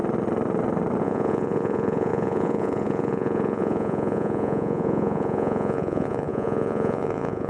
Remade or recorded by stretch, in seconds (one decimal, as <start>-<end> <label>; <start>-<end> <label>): 0.0-1.0 recorded; 1.0-7.5 remade

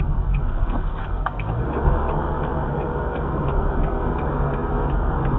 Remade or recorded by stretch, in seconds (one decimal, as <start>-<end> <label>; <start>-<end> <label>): 0.0-5.4 remade

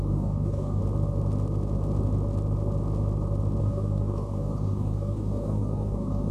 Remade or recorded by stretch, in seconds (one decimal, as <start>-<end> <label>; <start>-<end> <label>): 0.0-0.8 remade; 0.8-3.6 recorded; 3.6-6.3 remade

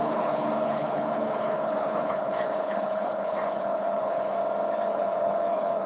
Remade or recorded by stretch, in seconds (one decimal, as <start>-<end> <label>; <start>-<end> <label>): 0.0-4.4 remade; 4.4-4.9 recorded; 4.9-5.9 remade

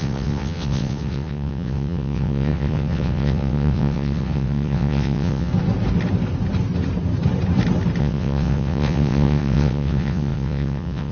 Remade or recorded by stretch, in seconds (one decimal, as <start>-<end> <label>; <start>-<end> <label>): 0.0-5.5 remade; 5.5-8.0 recorded; 8.0-11.1 remade

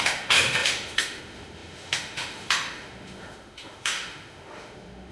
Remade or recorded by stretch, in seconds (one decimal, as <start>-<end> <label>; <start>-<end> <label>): 0.0-5.1 remade

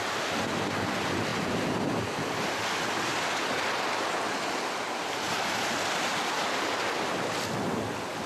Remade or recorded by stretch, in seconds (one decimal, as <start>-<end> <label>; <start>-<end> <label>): 0.0-8.3 recorded

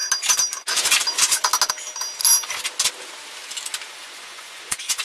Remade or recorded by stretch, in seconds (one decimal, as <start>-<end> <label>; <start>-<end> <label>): 0.0-3.9 recorded; 3.9-5.0 remade